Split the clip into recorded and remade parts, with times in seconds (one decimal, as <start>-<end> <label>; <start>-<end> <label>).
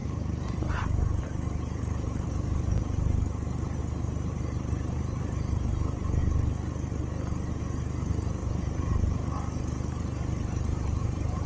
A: 0.0-6.2 remade; 6.2-7.6 recorded; 7.6-11.5 remade